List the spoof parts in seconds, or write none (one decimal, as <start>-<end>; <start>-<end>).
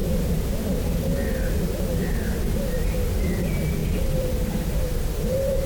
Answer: 0.0-3.4; 3.8-5.2